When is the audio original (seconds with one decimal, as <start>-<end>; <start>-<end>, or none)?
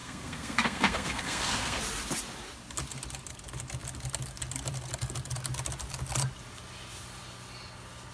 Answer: 1.8-8.1